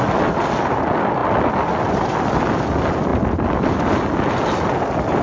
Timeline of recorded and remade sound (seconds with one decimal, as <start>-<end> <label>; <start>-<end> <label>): 0.0-5.2 recorded